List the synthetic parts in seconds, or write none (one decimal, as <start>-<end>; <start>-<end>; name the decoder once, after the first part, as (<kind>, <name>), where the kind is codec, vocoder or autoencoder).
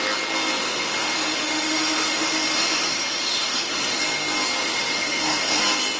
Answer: 0.6-4.0 (autoencoder, DAC-VAE); 4.6-5.6